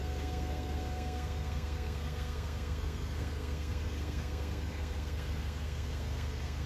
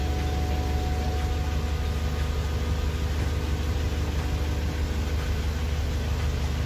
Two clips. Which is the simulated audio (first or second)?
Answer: first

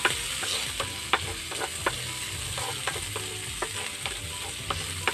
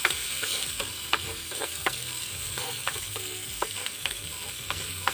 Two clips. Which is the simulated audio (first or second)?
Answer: second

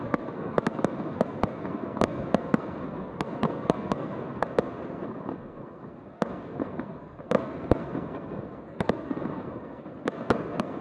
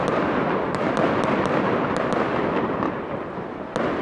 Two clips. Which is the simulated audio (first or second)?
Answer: first